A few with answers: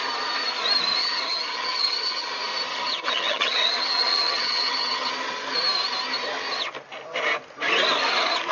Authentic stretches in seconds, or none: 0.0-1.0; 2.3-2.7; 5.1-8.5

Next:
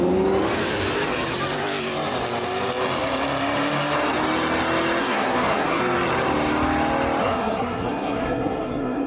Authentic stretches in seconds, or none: 0.0-5.0; 5.8-7.2

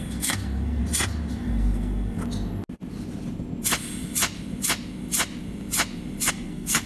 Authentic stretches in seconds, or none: 0.8-1.3; 2.2-6.3

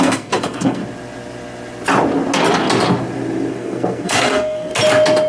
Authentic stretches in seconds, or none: 0.8-3.5; 4.7-5.3

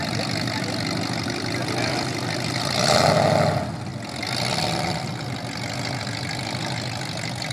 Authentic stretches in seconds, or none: 0.0-7.5